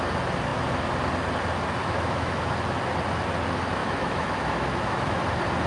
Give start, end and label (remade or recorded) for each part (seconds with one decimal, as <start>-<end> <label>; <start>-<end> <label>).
0.0-1.8 recorded; 1.8-2.5 remade; 2.5-3.8 recorded; 3.8-5.2 remade; 5.2-5.7 recorded